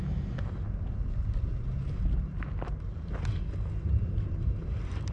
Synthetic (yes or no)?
no